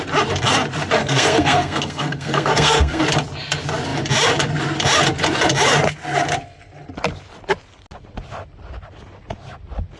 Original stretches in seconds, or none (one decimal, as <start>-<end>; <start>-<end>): 0.0-1.0; 3.0-10.0